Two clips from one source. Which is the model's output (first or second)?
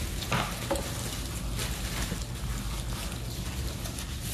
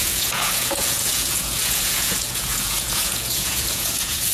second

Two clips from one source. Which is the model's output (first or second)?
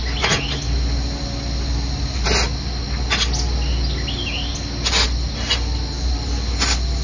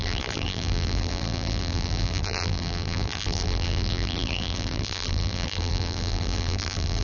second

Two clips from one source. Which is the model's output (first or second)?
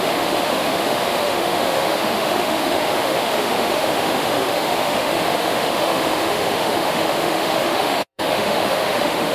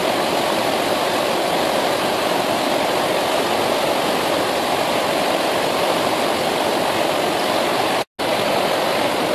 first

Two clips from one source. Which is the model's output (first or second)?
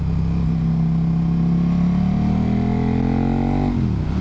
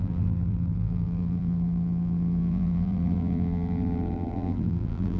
second